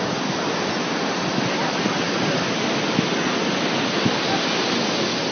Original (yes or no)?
yes